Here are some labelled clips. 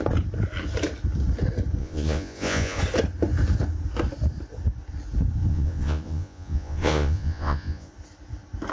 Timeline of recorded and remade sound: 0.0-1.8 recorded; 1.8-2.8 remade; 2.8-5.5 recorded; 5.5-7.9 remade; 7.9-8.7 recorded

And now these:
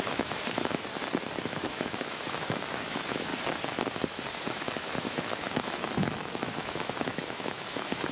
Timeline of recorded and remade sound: 0.0-0.9 remade; 0.9-1.4 recorded; 1.4-3.3 remade; 3.3-4.5 recorded; 4.5-8.1 remade

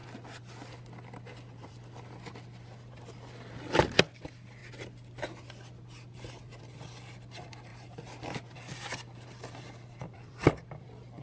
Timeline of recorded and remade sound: 0.0-0.8 recorded; 0.8-4.6 remade; 4.6-6.6 recorded; 6.6-7.7 remade; 7.7-8.5 recorded; 8.5-11.2 remade

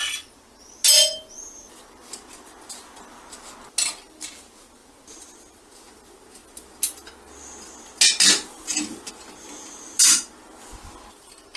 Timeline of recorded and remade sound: 0.0-11.6 recorded

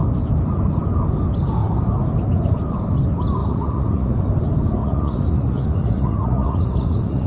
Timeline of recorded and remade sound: 0.0-3.4 recorded; 3.4-4.2 remade; 4.2-4.8 recorded; 4.8-7.3 remade

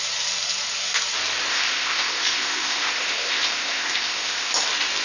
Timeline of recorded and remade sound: 0.0-1.5 recorded; 1.5-4.5 remade; 4.5-5.0 recorded